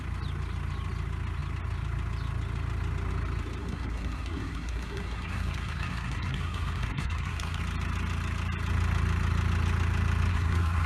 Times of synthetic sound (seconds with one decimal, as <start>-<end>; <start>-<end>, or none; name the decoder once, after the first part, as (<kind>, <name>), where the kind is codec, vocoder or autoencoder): 3.6-7.6 (codec, SNAC); 10.3-10.9